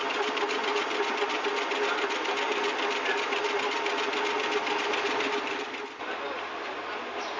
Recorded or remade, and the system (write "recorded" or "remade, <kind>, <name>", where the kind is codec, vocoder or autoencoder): recorded